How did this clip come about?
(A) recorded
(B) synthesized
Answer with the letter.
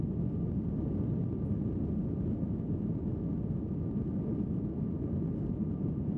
A